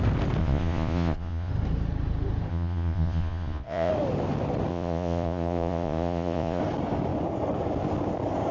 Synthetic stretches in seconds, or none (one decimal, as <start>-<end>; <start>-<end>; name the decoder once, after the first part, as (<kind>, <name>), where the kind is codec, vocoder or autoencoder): 0.4-1.5 (vocoder, Vocos); 2.5-3.9; 4.7-6.6